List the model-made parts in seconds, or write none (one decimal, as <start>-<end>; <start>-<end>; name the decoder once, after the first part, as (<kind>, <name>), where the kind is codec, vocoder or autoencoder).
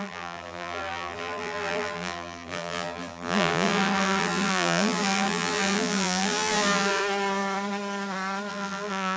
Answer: 0.0-7.0 (vocoder, BigVGAN v2); 8.5-9.2